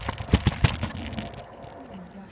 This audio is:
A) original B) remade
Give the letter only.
A